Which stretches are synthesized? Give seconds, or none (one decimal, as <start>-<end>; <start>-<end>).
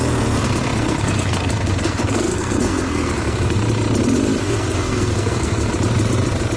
0.0-3.6; 4.4-5.7